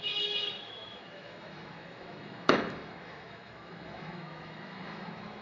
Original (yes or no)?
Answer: no